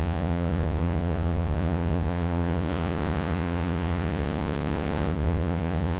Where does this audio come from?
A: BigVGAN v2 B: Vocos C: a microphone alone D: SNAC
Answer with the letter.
B